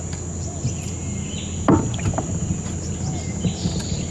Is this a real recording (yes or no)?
yes